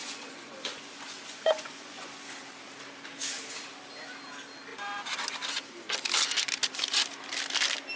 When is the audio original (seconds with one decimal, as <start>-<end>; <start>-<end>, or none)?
2.1-8.0